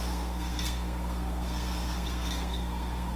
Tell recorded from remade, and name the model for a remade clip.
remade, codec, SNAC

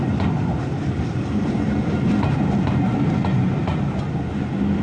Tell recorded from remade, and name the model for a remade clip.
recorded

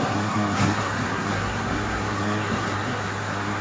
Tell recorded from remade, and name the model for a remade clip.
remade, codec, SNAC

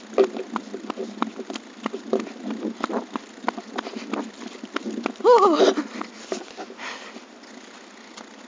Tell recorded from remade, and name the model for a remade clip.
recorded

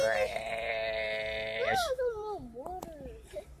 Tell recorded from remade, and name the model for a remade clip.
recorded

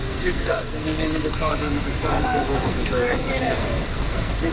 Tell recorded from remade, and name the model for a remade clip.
remade, codec, SNAC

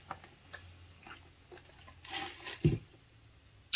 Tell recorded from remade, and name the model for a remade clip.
recorded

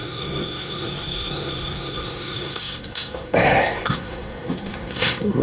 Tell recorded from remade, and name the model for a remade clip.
remade, codec, SNAC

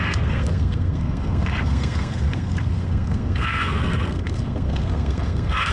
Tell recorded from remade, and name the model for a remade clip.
remade, codec, SNAC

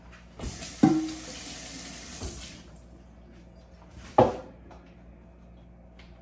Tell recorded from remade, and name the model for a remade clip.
recorded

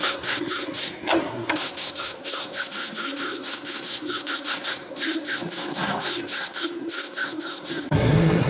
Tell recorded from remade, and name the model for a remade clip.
remade, codec, SNAC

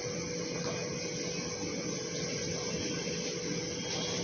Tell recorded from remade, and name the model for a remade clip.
recorded